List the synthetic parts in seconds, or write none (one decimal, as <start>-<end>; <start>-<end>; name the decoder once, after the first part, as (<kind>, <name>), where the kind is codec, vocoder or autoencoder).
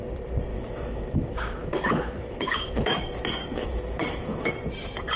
0.5-3.0 (autoencoder, DAC-VAE); 3.4-4.5